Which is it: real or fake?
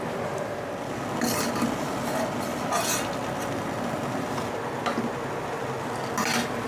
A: real